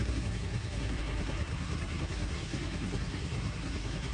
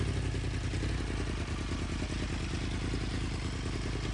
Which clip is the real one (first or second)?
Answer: second